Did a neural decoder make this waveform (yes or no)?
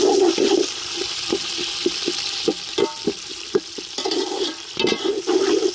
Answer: no